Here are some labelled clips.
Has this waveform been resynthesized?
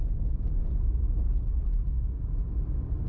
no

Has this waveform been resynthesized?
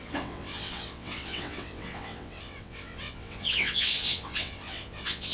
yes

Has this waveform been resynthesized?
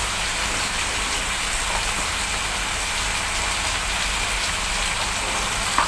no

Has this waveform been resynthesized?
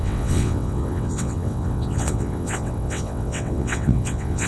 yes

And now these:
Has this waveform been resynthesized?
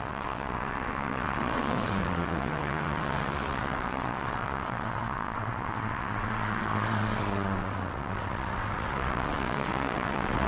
yes